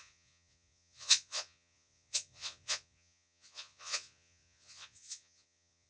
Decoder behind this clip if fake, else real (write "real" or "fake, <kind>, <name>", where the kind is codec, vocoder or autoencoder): fake, vocoder, Vocos